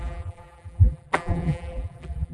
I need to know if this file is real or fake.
fake